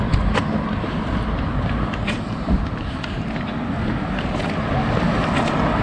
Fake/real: real